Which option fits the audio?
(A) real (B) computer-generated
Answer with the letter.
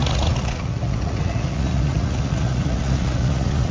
B